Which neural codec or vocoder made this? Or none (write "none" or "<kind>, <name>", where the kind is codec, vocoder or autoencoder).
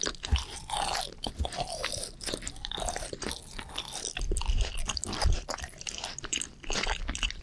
none